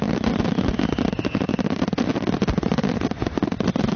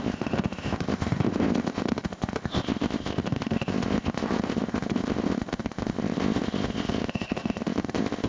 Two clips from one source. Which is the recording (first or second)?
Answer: first